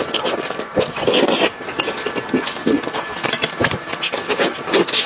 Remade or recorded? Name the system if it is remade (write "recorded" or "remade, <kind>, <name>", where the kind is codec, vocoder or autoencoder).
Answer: recorded